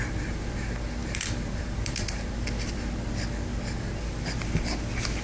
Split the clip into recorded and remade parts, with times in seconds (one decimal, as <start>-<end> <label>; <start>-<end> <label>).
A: 0.0-1.0 recorded; 1.0-2.3 remade; 2.3-5.2 recorded